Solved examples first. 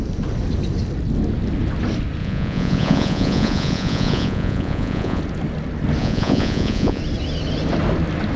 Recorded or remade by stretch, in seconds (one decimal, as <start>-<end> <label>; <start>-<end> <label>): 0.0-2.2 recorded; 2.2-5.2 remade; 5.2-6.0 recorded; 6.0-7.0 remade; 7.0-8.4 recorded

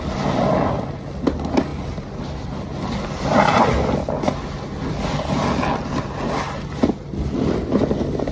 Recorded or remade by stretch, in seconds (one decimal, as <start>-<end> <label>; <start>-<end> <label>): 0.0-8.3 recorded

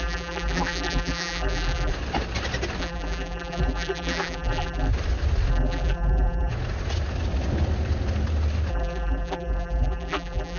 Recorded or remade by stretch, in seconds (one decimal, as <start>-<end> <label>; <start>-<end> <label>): 0.0-1.9 remade; 1.9-2.8 recorded; 2.8-4.9 remade; 4.9-5.5 recorded; 5.5-6.5 remade; 6.5-8.7 recorded; 8.7-10.6 remade

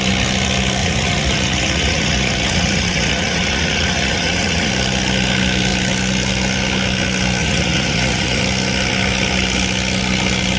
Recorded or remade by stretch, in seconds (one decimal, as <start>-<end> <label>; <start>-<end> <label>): 0.0-0.8 recorded; 0.8-4.7 remade; 4.7-7.4 recorded; 7.4-8.4 remade; 8.4-10.6 recorded

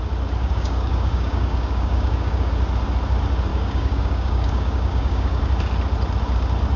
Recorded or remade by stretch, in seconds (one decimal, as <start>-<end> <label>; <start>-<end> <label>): 0.0-0.4 recorded; 0.4-2.5 remade; 2.5-3.5 recorded; 3.5-5.4 remade; 5.4-6.8 recorded

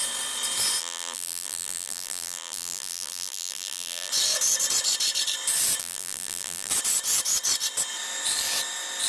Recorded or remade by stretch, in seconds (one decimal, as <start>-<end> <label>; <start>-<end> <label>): 0.0-0.8 recorded; 0.8-4.1 remade; 4.1-5.8 recorded; 5.8-6.7 remade; 6.7-9.1 recorded

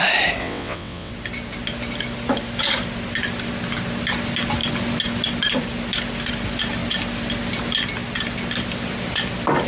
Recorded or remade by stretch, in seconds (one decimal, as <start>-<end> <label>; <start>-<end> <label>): 0.0-0.4 recorded; 0.4-1.1 remade; 1.1-9.7 recorded

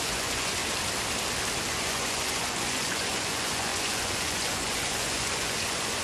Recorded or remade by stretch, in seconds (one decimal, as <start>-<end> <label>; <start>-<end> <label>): 0.0-0.6 remade; 0.6-1.7 recorded; 1.7-6.0 remade